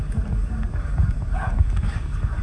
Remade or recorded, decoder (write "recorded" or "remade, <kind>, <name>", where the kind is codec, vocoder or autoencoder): remade, codec, DAC